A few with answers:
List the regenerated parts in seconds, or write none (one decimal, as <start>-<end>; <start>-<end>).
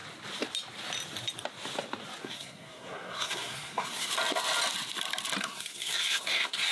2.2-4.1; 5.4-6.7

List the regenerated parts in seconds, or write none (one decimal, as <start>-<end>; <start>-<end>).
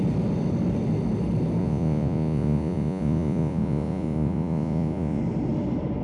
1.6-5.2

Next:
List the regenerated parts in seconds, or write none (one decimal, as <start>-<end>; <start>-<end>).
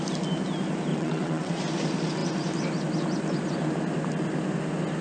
0.9-1.6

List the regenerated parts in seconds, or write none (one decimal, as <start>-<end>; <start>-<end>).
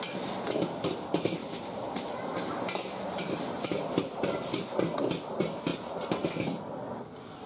1.4-4.5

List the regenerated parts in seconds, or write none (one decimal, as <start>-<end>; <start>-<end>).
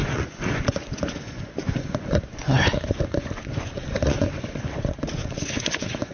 0.0-6.1